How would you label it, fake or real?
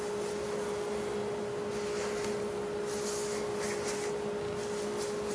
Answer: real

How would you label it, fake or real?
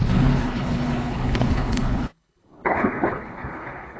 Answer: fake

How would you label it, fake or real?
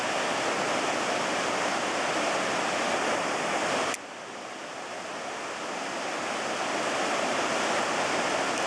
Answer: real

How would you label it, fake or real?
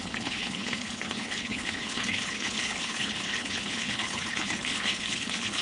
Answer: fake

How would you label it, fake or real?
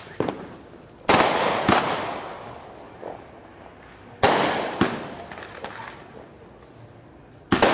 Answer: real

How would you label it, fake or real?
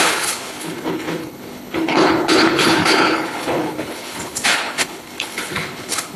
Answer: fake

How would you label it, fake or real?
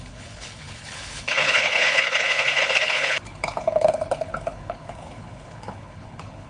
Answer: fake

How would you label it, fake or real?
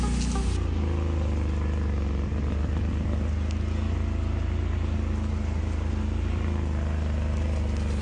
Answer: real